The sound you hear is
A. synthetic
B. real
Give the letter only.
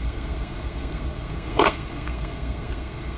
A